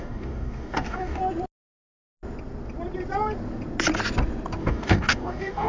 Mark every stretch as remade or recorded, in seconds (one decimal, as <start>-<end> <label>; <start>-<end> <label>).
0.0-1.2 remade; 1.2-4.6 recorded; 4.6-5.7 remade

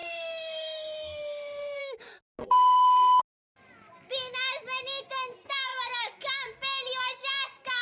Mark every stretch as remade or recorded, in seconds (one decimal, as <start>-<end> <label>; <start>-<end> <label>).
0.0-1.8 remade; 1.8-2.4 recorded; 2.4-3.2 remade; 3.2-7.8 recorded